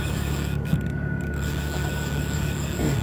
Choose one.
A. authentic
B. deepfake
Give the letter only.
B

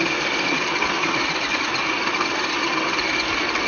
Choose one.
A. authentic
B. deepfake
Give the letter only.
A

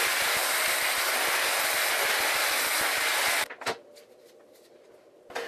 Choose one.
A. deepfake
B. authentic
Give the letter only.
B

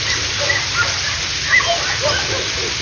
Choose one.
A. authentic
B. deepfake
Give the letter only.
A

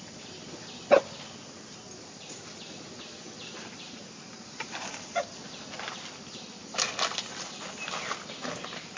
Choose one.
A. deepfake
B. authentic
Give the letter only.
B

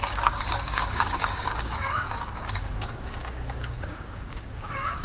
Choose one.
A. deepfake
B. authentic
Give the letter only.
A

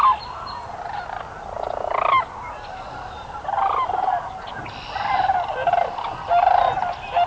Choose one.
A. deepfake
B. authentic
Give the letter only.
B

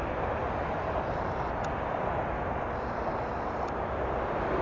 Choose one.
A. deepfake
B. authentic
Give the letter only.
B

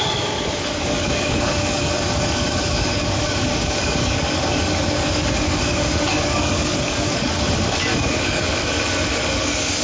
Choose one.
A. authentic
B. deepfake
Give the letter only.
B